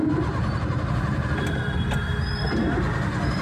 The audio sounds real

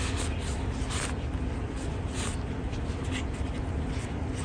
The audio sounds real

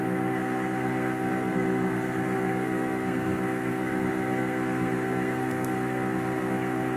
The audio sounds fake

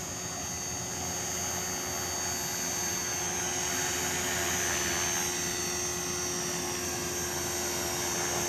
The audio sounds real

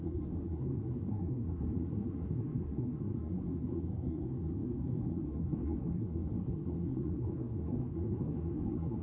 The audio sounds fake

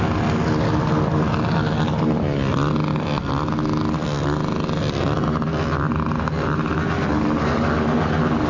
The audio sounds real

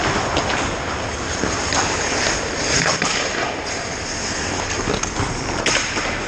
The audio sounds real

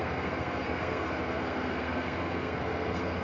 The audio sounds fake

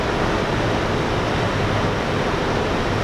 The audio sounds real